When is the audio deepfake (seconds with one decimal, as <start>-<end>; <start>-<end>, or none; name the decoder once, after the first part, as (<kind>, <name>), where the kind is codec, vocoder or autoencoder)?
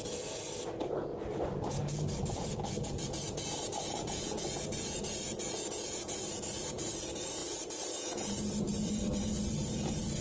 0.0-1.1 (vocoder, Vocos); 1.6-10.2